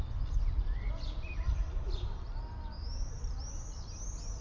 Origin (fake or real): real